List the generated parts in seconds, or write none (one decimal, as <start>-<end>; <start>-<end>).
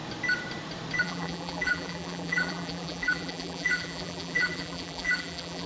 1.0-5.7